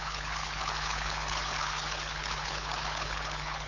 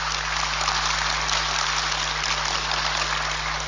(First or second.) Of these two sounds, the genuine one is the second